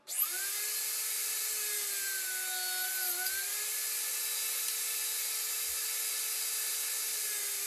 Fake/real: real